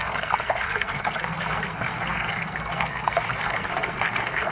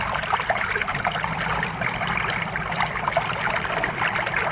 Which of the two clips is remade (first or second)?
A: first